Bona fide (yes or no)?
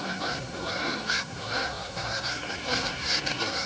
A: no